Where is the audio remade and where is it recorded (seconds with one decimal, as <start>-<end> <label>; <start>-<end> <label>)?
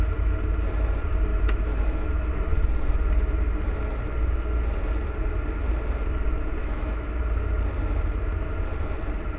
0.0-1.3 recorded; 1.3-2.3 remade; 2.3-6.6 recorded; 6.6-7.2 remade; 7.2-9.4 recorded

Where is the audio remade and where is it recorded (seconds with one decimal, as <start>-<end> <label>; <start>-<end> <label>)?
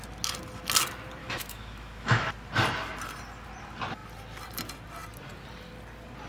0.0-1.2 recorded; 1.2-2.3 remade; 2.3-6.3 recorded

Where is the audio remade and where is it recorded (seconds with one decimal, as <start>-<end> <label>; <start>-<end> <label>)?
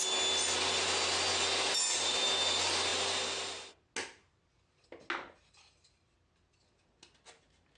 0.0-7.8 recorded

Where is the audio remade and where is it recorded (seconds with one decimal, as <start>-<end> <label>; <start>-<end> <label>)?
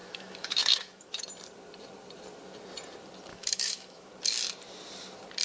0.0-1.2 remade; 1.2-3.3 recorded; 3.3-4.1 remade; 4.1-5.4 recorded